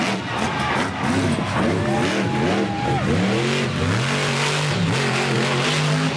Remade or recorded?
recorded